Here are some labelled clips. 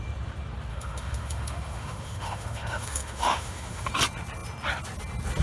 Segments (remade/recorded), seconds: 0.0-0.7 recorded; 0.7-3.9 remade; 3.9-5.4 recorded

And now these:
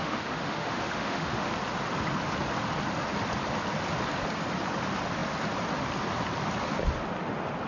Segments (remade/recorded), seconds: 0.0-1.5 remade; 1.5-7.7 recorded

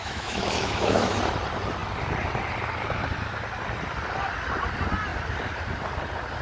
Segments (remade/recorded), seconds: 0.0-1.2 remade; 1.2-6.4 recorded

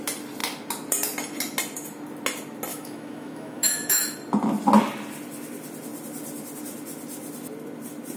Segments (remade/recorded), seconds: 0.0-2.7 recorded; 2.7-4.0 remade; 4.0-8.2 recorded

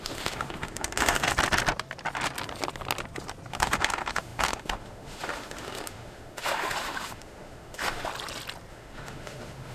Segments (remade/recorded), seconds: 0.0-1.3 remade; 1.3-3.5 recorded; 3.5-8.1 remade; 8.1-8.7 recorded; 8.7-9.7 remade

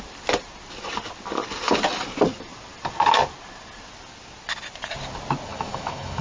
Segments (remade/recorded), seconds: 0.0-5.5 recorded; 5.5-6.2 remade